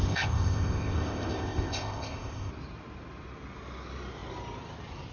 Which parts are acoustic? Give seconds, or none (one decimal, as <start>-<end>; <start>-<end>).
2.5-5.1